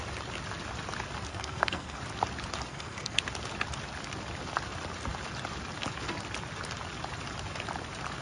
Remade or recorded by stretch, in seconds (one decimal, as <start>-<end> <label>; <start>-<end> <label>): 0.0-1.3 recorded; 1.3-2.0 remade; 2.0-2.7 recorded; 2.7-3.2 remade; 3.2-8.2 recorded